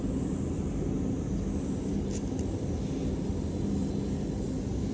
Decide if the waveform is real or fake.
real